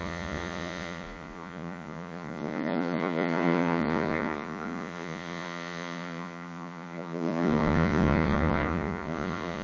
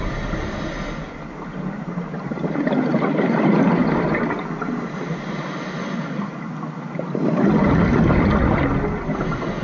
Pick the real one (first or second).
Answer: second